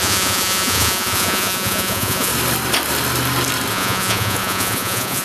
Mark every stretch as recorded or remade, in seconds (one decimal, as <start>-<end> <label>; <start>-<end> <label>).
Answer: 0.0-2.3 remade; 2.3-3.7 recorded; 3.7-5.2 remade